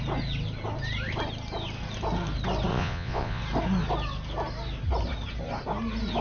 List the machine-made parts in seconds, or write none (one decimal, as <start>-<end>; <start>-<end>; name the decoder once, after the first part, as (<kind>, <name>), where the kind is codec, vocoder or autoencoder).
2.7-3.4 (vocoder, Vocos)